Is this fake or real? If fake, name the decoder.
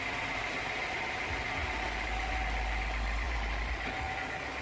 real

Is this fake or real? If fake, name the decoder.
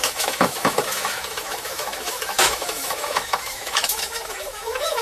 fake, autoencoder, DAC-VAE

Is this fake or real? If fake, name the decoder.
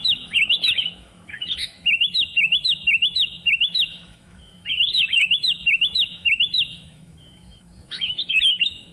fake, autoencoder, DAC-VAE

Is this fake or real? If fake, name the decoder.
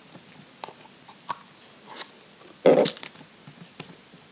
real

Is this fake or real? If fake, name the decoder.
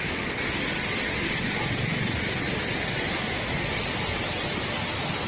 real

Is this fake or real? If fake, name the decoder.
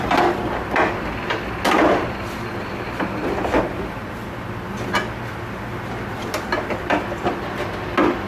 real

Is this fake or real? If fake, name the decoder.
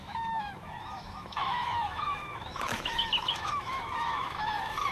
fake, autoencoder, DAC-VAE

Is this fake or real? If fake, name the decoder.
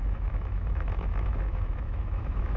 fake, autoencoder, DAC-VAE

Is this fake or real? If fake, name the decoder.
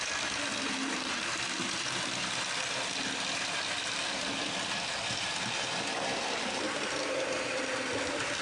real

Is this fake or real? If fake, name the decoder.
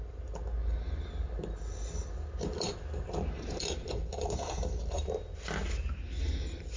real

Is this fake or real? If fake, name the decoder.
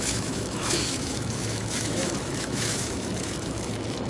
fake, autoencoder, DAC-VAE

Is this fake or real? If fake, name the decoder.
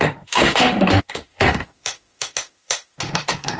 fake, autoencoder, DAC-VAE